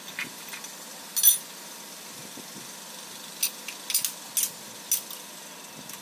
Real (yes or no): yes